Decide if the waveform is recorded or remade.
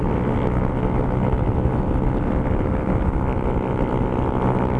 recorded